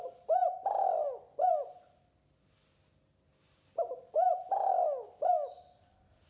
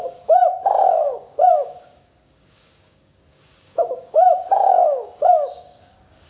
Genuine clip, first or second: first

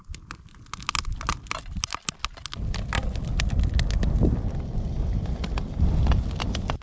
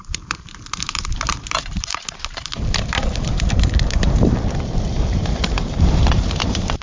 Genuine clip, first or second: first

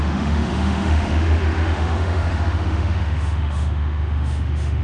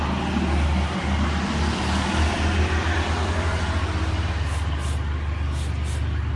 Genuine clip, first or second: second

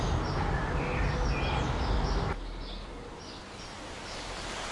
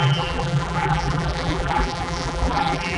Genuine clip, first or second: first